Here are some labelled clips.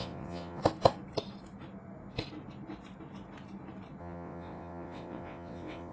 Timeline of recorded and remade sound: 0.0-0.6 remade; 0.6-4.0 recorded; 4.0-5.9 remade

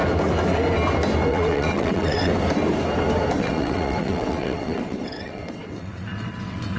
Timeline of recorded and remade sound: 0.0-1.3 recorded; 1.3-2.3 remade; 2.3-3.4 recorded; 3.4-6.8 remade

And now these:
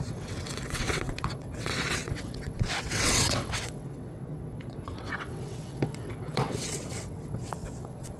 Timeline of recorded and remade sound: 0.0-8.2 remade